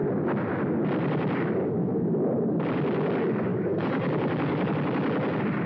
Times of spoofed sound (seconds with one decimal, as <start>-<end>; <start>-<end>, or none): 3.5-4.7